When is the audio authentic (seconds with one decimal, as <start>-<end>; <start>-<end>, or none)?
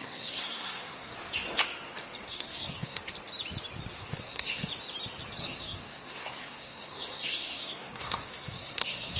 1.1-2.3; 3.0-3.9; 4.7-5.4